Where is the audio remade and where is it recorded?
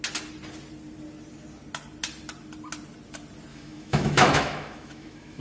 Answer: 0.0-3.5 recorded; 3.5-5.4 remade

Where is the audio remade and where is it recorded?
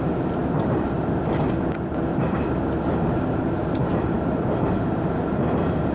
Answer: 0.0-5.9 recorded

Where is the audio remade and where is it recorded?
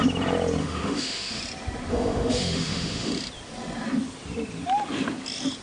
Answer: 0.0-0.6 recorded; 0.6-1.4 remade; 1.4-1.9 recorded; 1.9-3.1 remade; 3.1-5.6 recorded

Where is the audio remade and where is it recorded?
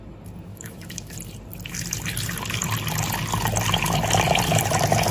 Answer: 0.0-0.5 recorded; 0.5-1.1 remade; 1.1-5.1 recorded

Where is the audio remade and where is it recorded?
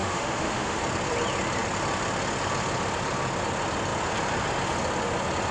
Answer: 0.0-0.8 remade; 0.8-5.5 recorded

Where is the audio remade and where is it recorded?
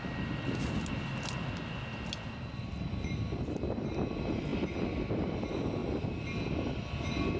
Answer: 0.0-7.4 recorded